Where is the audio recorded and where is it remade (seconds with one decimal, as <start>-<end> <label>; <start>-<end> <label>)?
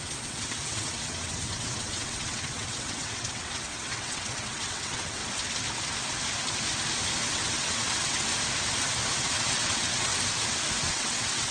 0.0-5.2 remade; 5.2-7.3 recorded; 7.3-8.3 remade; 8.3-9.2 recorded; 9.2-10.1 remade; 10.1-10.8 recorded; 10.8-11.5 remade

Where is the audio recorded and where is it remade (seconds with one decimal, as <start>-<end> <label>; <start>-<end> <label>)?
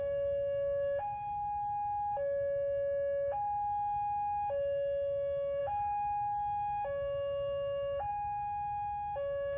0.0-9.6 recorded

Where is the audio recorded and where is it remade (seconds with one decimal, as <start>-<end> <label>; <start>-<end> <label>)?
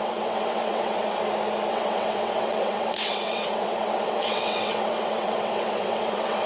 0.0-1.2 remade; 1.2-1.7 recorded; 1.7-6.5 remade